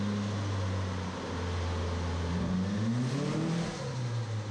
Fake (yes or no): no